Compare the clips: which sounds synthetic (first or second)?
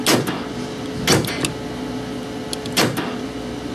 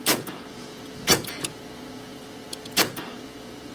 second